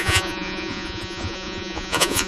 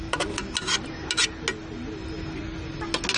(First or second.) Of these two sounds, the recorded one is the second